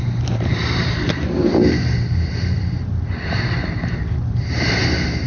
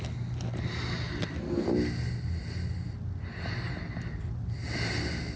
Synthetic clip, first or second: first